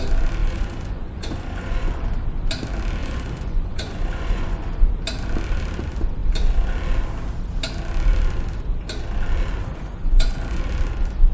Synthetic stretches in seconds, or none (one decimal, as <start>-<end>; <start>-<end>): 0.4-1.9; 3.0-4.9; 9.6-10.6

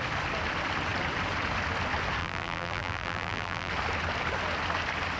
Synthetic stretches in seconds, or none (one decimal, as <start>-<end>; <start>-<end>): 2.2-3.7

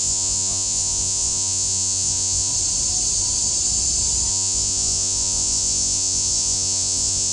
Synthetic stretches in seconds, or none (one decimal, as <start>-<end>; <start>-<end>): 0.0-2.5; 4.3-7.3

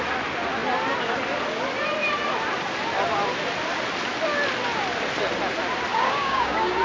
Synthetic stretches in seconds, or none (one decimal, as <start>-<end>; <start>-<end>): 5.9-6.8

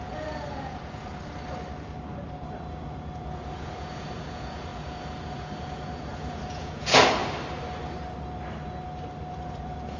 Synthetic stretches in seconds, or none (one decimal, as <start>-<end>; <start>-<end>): 0.0-1.1; 2.7-7.2; 9.3-10.0

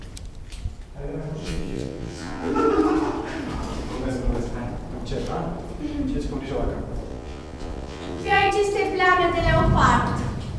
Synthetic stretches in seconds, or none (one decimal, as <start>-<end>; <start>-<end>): 1.4-2.5; 7.1-8.5